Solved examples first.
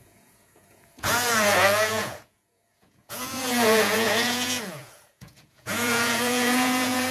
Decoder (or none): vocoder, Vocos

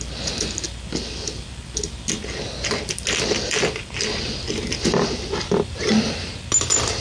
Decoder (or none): none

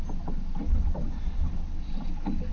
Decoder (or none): none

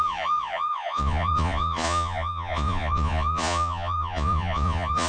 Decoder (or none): vocoder, Vocos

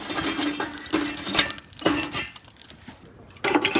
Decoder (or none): none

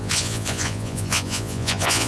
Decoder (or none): vocoder, Vocos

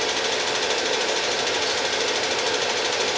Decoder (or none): none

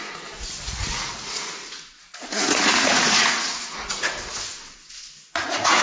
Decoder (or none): vocoder, Vocos